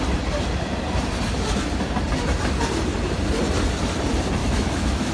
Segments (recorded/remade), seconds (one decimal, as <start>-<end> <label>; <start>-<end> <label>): 0.0-4.4 recorded; 4.4-5.1 remade